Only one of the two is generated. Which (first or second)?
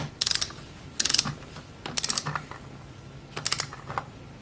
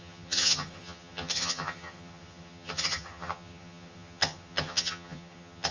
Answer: second